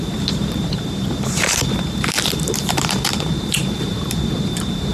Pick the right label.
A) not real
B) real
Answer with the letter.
A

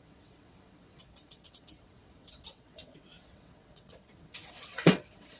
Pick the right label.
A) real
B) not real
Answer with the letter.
B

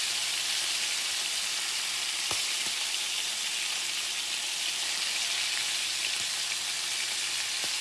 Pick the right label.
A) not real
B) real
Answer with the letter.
B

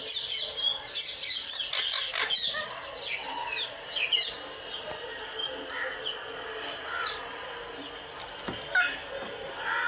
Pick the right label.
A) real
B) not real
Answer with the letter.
A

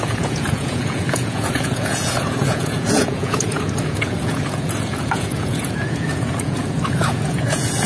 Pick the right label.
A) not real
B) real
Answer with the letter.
A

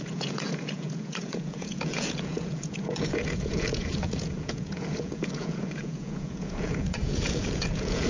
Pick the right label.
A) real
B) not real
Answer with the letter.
B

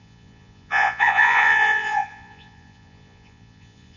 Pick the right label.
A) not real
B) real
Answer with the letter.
A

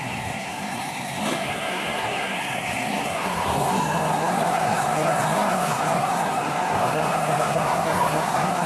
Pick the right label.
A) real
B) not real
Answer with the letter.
B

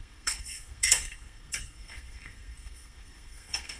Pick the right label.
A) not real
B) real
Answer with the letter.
A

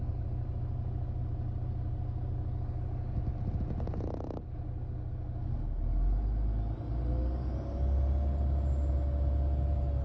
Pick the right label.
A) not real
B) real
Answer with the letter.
B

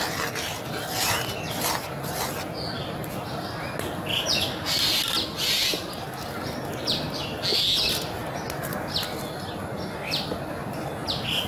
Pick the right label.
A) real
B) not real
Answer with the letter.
A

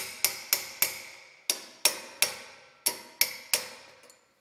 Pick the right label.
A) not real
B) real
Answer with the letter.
B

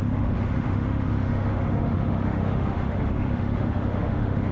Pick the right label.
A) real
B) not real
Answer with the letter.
B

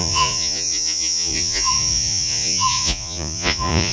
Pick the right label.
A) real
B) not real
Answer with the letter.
B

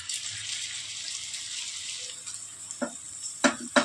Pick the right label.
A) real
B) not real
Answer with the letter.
A